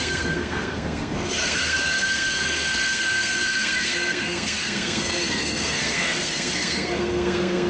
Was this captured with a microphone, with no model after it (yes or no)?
no